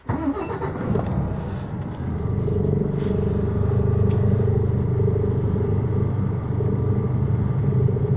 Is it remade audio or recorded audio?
recorded